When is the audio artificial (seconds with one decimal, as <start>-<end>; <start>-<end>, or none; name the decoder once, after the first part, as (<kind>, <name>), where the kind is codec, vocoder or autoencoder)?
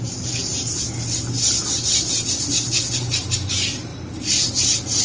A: none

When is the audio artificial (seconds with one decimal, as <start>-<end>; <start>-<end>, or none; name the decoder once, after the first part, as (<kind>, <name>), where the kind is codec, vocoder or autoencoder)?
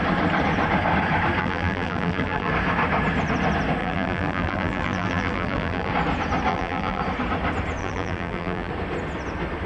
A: 1.4-2.5 (vocoder, BigVGAN v2); 3.8-5.9; 6.5-7.0; 7.8-8.7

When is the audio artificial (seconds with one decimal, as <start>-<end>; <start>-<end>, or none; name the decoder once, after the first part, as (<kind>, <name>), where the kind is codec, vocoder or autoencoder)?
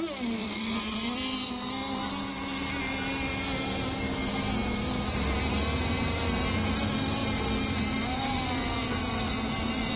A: 0.4-1.5 (vocoder, BigVGAN v2)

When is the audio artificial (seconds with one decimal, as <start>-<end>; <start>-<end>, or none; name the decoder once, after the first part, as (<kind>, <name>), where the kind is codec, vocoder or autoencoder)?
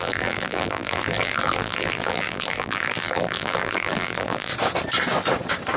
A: 0.0-4.5 (vocoder, BigVGAN v2)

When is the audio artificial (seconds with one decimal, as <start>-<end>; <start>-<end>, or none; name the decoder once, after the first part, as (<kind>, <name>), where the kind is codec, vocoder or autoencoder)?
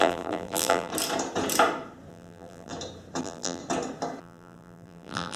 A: 0.0-0.9 (vocoder, BigVGAN v2); 2.1-2.7; 3.2-3.6; 4.2-5.4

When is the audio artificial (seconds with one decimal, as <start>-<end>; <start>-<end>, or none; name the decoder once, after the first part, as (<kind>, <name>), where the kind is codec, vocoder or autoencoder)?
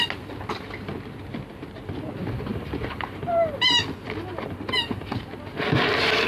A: 2.5-3.5 (vocoder, BigVGAN v2)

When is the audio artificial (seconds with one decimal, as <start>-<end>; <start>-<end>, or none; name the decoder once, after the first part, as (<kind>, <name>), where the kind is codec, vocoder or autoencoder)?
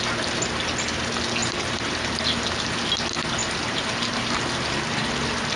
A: 1.4-2.7 (vocoder, BigVGAN v2); 3.4-5.6